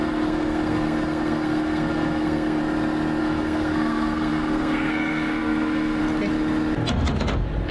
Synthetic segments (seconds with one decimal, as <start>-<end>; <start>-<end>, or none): 0.0-2.6; 3.2-6.0